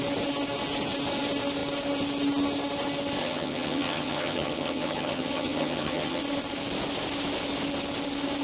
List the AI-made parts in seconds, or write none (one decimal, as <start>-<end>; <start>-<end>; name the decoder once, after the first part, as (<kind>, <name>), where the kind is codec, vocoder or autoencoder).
3.2-6.2 (vocoder, HiFi-GAN)